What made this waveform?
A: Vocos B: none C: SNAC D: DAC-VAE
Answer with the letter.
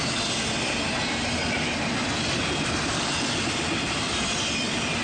B